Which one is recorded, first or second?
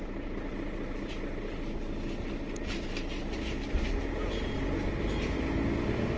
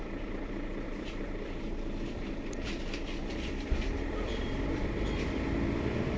first